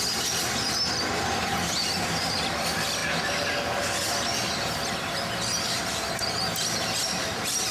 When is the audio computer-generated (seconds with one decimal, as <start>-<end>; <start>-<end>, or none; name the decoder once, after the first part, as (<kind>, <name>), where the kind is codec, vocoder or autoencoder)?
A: none